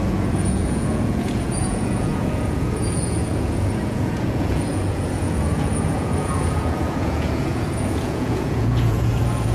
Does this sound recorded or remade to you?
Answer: remade